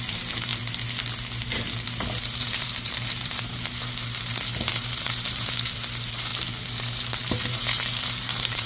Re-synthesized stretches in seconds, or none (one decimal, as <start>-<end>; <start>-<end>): 0.0-0.5; 2.2-6.3; 6.8-8.7

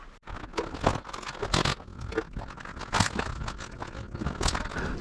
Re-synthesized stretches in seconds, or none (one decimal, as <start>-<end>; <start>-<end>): none

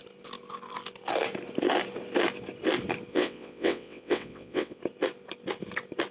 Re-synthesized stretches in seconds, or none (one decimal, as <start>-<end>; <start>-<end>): 3.1-4.8

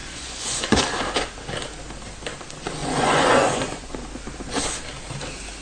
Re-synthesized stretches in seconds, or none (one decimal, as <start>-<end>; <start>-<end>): 0.0-0.8; 2.8-4.0

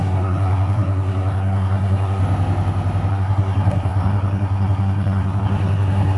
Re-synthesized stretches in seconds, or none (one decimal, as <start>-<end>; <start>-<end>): 0.0-2.2; 3.1-6.2

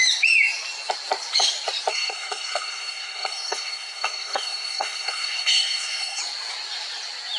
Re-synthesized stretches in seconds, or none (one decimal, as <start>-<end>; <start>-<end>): 1.9-6.2